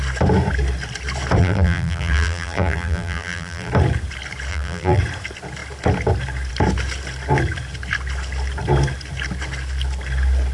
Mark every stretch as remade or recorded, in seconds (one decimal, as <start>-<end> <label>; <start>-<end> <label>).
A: 0.0-1.4 recorded; 1.4-3.7 remade; 3.7-4.5 recorded; 4.5-5.0 remade; 5.0-10.5 recorded

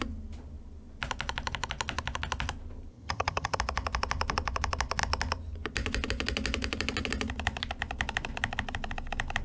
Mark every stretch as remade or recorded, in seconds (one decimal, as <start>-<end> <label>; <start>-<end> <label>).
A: 0.0-2.9 recorded; 2.9-3.6 remade; 3.6-9.4 recorded

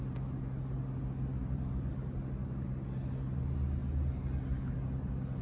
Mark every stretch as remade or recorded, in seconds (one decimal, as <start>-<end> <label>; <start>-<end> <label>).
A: 0.0-1.4 recorded; 1.4-1.9 remade; 1.9-5.4 recorded

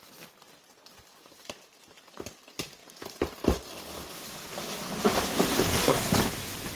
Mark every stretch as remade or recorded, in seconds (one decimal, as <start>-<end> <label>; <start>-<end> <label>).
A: 0.0-5.5 recorded; 5.5-6.2 remade; 6.2-6.8 recorded

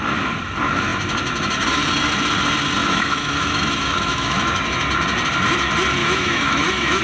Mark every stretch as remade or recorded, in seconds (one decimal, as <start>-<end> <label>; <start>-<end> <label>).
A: 0.0-2.8 recorded; 2.8-4.8 remade; 4.8-6.0 recorded; 6.0-7.0 remade